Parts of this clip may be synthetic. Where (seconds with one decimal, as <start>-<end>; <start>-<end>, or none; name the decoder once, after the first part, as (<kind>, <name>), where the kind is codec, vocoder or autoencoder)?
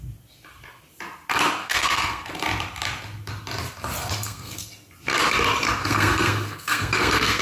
1.6-2.3 (codec, SNAC); 4.0-4.7; 5.8-7.4